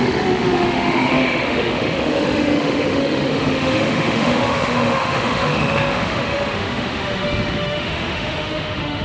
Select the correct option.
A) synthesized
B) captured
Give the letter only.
A